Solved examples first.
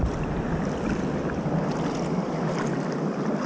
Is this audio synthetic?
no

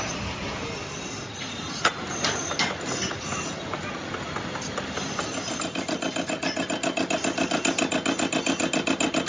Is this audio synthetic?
no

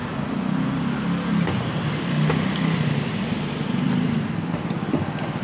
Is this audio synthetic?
no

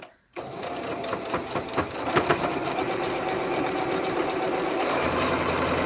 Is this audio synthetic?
no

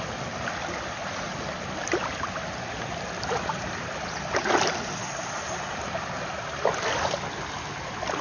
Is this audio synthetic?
no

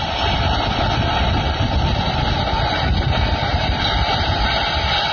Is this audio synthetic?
no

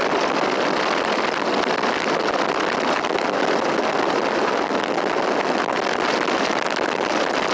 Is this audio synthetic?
no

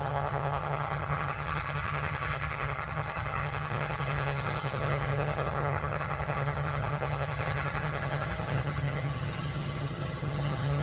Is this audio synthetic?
yes